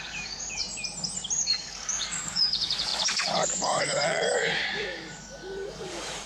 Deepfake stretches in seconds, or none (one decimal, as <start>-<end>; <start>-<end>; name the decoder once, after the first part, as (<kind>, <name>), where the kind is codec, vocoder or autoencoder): 0.0-0.6 (codec, DAC); 1.4-6.3